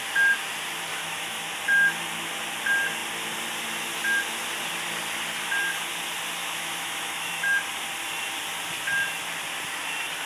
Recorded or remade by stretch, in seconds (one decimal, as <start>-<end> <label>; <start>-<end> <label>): 0.0-0.9 recorded; 0.9-1.5 remade; 1.5-6.4 recorded; 6.4-7.6 remade; 7.6-10.3 recorded